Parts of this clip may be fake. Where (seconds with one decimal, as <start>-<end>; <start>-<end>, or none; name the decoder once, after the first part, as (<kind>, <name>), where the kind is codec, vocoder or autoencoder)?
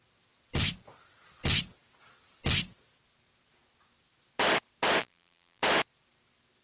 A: 5.0-5.6 (vocoder, BigVGAN v2)